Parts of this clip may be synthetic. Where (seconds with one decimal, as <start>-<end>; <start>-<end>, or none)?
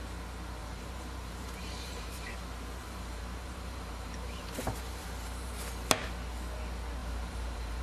0.6-2.3; 2.8-5.5; 7.0-7.8